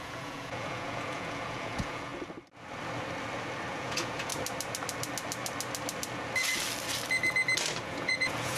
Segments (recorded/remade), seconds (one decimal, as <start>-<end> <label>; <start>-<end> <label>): 0.0-2.1 remade; 2.1-3.7 recorded; 3.7-4.3 remade; 4.3-7.8 recorded; 7.8-8.6 remade